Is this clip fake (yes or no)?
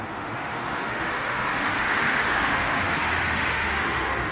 yes